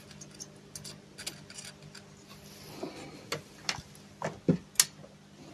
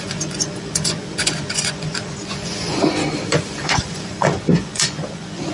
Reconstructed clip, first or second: second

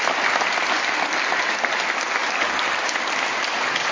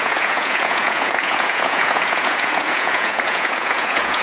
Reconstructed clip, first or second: second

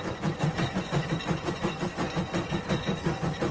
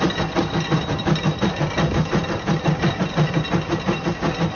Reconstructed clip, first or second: first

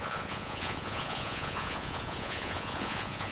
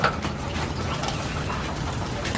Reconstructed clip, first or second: first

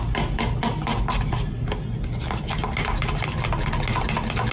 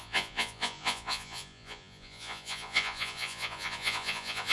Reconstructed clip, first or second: second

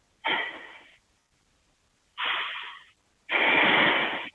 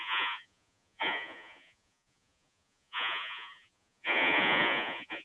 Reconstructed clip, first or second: second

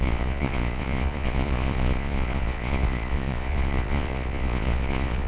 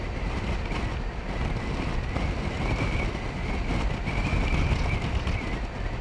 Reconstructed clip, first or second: first